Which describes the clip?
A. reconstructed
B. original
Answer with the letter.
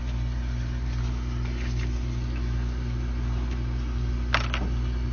B